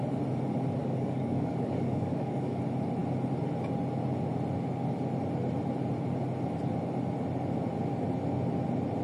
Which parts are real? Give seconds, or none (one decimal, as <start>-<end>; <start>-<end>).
0.0-0.8; 2.6-9.0